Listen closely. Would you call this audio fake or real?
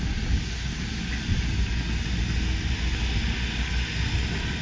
real